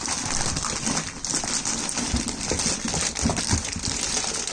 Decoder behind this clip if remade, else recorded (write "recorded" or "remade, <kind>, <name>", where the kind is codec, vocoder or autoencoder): recorded